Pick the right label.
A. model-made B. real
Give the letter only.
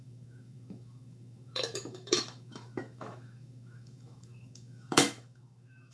A